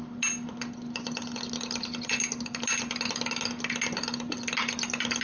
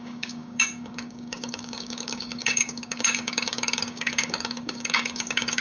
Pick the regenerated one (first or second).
second